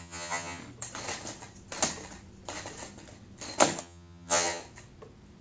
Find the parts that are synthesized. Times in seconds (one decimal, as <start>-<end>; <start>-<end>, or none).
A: 0.0-0.6; 3.8-4.6